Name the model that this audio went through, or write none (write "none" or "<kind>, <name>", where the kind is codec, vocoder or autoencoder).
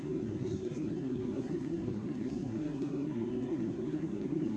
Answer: codec, SNAC